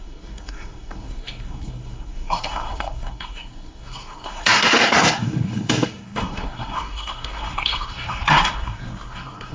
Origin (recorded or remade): remade